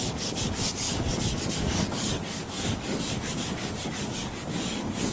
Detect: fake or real fake